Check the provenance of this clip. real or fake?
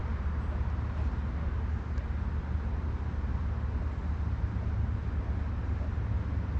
real